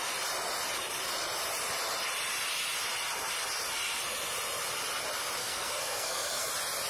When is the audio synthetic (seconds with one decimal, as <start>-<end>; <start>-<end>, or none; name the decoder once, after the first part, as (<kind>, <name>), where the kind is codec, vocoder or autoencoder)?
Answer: 5.4-6.5 (codec, SNAC)